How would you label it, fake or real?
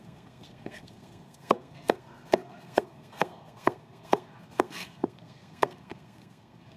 fake